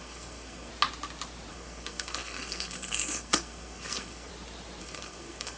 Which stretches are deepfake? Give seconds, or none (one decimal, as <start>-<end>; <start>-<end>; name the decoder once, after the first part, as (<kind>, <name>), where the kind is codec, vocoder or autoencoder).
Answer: 0.0-0.7 (codec, SNAC); 1.5-4.3; 4.8-5.6

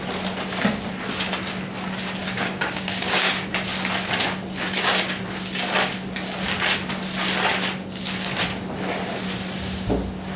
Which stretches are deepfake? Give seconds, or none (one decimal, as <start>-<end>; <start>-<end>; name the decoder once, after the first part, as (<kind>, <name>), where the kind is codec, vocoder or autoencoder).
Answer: 2.2-3.3 (codec, DAC)

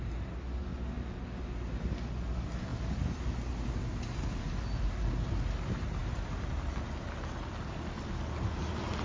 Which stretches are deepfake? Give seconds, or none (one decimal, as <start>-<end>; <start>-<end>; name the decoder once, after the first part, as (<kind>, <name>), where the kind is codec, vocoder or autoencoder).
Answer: none

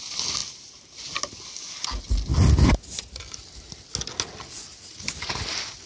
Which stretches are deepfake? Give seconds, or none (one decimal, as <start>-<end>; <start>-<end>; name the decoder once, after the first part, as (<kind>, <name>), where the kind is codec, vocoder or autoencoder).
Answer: none